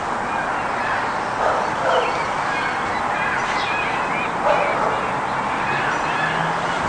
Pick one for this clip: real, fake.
real